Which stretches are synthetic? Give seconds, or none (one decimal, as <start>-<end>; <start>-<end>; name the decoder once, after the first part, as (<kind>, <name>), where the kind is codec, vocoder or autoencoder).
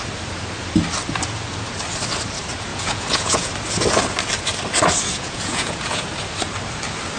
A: 2.7-3.5 (vocoder, Vocos); 5.1-6.1